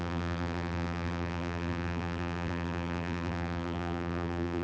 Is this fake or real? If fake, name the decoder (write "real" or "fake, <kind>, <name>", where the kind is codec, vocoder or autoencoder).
fake, vocoder, BigVGAN v2